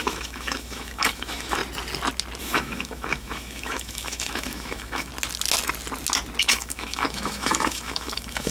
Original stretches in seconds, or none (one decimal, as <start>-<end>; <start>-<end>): 1.6-2.4; 5.1-6.4